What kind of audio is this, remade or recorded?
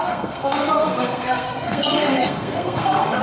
remade